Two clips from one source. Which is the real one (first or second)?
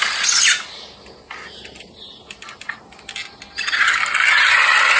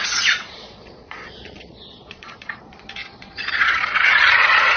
first